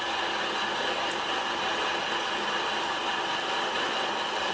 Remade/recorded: recorded